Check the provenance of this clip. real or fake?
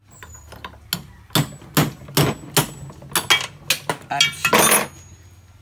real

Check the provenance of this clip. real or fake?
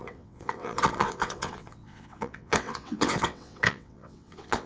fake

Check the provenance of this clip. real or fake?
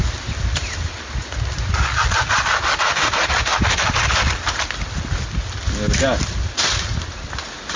real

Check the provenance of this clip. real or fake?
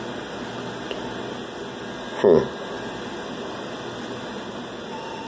real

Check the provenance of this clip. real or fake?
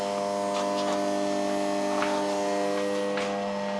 real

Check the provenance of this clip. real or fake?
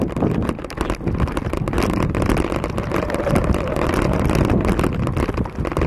real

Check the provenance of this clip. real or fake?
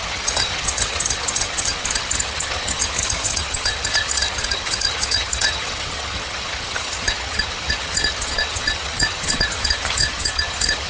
fake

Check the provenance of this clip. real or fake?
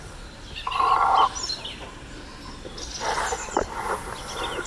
real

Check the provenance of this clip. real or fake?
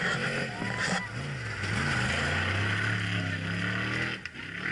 real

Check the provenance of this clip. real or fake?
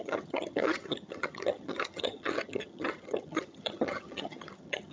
fake